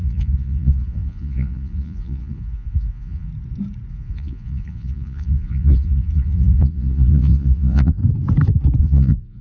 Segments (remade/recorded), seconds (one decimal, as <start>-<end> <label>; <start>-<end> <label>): 0.0-3.3 remade; 3.3-3.9 recorded; 3.9-8.0 remade; 8.0-8.8 recorded; 8.8-9.4 remade

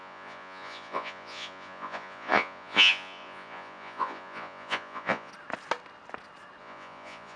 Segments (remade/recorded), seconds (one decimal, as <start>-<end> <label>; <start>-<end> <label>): 0.0-5.3 remade; 5.3-6.6 recorded; 6.6-7.4 remade

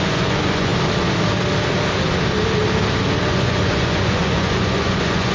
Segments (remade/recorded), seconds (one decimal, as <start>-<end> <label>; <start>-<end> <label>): 0.0-0.7 remade; 0.7-3.3 recorded; 3.3-5.3 remade

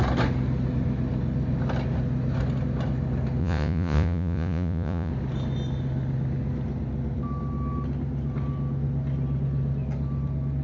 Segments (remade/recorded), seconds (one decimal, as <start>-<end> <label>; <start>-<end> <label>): 0.0-3.4 recorded; 3.4-5.1 remade; 5.1-10.6 recorded

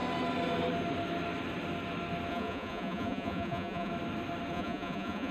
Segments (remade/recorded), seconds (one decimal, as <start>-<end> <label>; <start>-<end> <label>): 0.0-2.3 recorded; 2.3-3.9 remade; 3.9-4.5 recorded; 4.5-5.3 remade

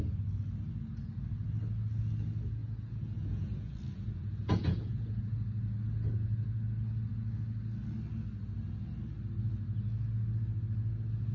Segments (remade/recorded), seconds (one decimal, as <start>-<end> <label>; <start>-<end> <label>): 0.0-2.6 recorded; 2.6-5.2 remade; 5.2-11.3 recorded

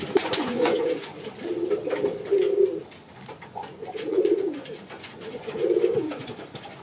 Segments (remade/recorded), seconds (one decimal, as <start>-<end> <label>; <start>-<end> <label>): 0.0-1.1 remade; 1.1-3.5 recorded; 3.5-6.8 remade

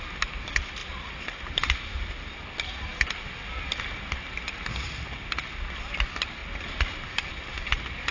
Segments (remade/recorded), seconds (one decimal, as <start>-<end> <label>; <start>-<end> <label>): 0.0-8.1 recorded